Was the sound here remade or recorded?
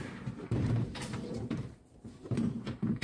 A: remade